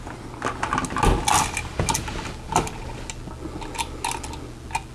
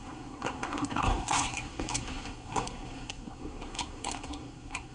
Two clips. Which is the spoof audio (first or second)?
second